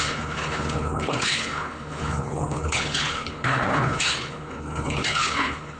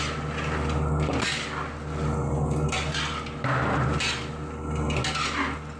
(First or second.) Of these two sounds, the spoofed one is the first